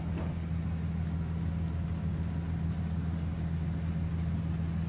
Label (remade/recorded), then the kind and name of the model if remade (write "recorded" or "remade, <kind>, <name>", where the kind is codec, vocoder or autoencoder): recorded